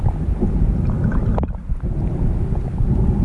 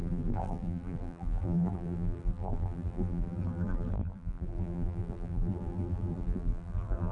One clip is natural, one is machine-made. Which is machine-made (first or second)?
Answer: second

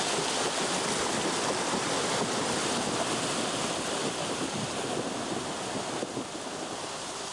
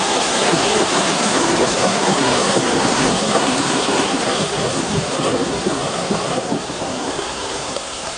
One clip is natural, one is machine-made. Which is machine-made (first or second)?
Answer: second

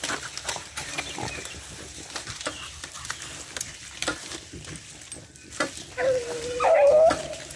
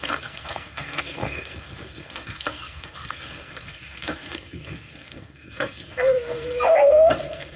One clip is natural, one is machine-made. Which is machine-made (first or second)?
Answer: second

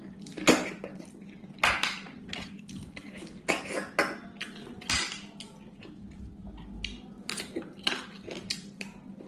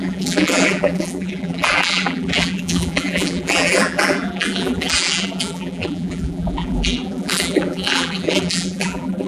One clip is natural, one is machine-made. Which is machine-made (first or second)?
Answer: second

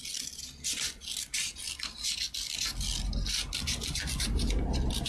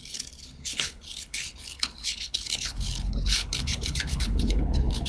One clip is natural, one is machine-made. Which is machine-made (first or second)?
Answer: second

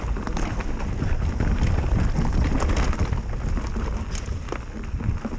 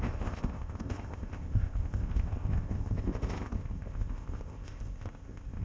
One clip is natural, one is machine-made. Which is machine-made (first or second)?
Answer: second